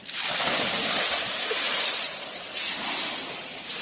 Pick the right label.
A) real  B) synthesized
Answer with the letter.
A